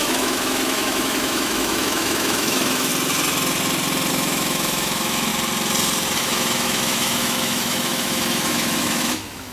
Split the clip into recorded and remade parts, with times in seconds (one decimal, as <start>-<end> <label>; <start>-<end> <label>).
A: 0.0-2.9 remade; 2.9-4.1 recorded; 4.1-5.3 remade; 5.3-6.2 recorded; 6.2-9.5 remade